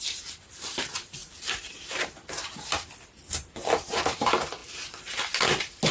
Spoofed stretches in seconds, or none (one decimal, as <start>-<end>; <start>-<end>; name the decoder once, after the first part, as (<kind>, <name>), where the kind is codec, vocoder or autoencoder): 1.2-2.0 (vocoder, BigVGAN v2)